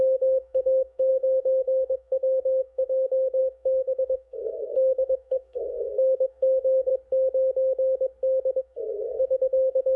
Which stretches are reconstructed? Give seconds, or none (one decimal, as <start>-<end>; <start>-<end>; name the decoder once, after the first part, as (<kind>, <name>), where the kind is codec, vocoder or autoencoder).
0.0-6.9 (codec, SNAC); 8.6-10.0